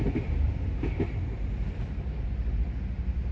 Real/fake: real